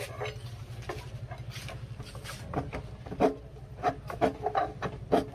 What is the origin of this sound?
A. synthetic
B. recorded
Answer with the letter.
B